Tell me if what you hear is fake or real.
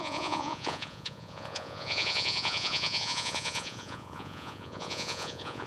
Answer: fake